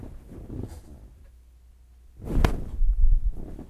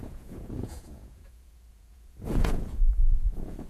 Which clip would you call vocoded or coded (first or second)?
second